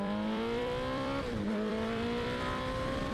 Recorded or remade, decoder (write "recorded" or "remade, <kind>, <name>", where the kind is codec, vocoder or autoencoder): remade, vocoder, BigVGAN v2